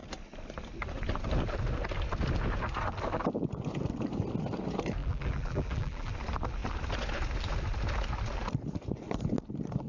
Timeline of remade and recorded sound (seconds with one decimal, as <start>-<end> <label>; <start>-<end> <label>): 0.0-5.0 recorded; 5.0-6.1 remade; 6.1-9.9 recorded